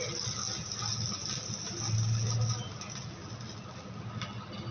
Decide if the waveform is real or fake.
real